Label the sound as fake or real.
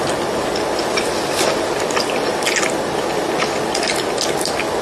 real